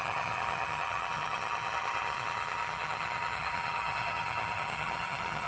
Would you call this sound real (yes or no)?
no